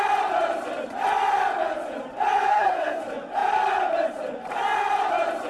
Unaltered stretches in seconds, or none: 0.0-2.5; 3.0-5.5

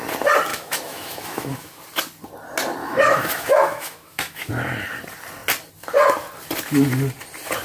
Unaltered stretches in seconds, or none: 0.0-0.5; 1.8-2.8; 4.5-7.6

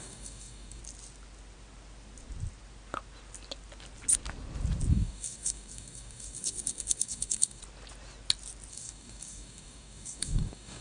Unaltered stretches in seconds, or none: 0.8-4.9; 7.6-8.7

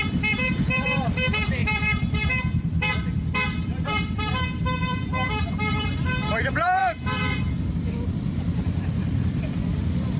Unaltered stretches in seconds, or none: none

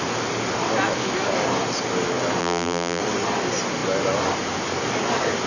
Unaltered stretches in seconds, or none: 0.0-2.4; 3.0-5.5